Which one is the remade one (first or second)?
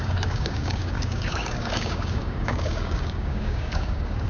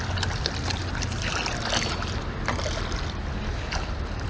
first